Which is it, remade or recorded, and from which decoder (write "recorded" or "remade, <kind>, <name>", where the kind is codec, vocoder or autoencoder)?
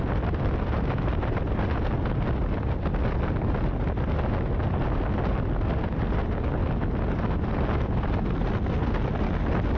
recorded